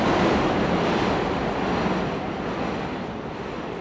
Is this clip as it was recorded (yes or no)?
yes